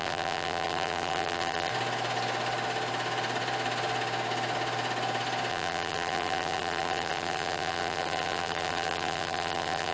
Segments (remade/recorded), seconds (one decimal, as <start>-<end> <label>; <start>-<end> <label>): 0.0-1.7 remade; 1.7-5.5 recorded; 5.5-9.9 remade